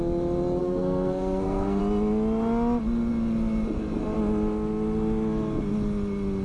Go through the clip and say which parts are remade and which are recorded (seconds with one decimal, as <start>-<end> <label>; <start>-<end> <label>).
0.0-0.6 recorded; 0.6-1.8 remade; 1.8-6.4 recorded